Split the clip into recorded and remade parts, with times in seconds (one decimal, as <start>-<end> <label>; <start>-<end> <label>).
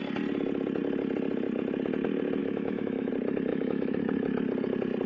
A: 0.0-2.4 recorded; 2.4-3.1 remade; 3.1-3.5 recorded; 3.5-4.0 remade; 4.0-5.1 recorded